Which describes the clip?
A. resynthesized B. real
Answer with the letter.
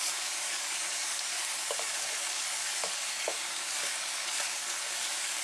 A